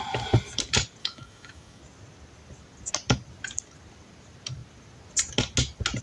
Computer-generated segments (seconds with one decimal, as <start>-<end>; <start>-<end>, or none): 1.0-1.8